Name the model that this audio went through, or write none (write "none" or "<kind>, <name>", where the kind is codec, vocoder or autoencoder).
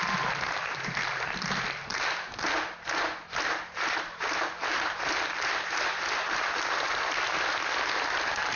none